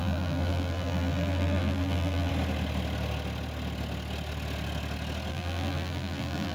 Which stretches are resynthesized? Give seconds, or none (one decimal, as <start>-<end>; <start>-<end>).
0.0-2.3; 5.3-6.5